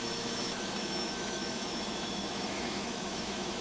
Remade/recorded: remade